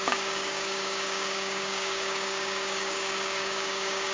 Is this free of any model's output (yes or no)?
no